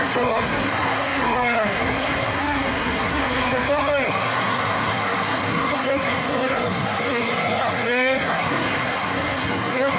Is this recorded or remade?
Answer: remade